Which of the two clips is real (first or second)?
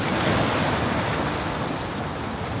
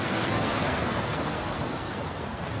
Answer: first